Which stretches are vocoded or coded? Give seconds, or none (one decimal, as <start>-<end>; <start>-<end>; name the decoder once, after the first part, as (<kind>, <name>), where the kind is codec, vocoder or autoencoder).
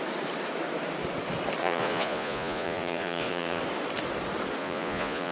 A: 1.6-3.6 (vocoder, Vocos); 4.6-5.3